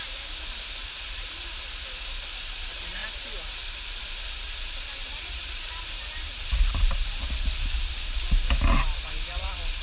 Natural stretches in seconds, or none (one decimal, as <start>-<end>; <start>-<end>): 0.0-0.8; 1.4-5.0; 7.9-9.8